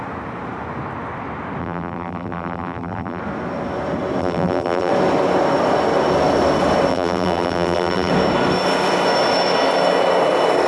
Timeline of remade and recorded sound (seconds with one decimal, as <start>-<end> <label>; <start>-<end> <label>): 0.0-1.6 recorded; 1.6-3.2 remade; 3.2-4.2 recorded; 4.2-4.9 remade; 4.9-6.9 recorded; 6.9-8.1 remade; 8.1-10.7 recorded